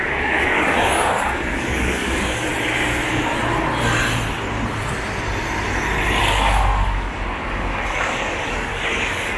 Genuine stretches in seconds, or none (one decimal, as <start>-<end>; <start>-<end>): 2.5-6.2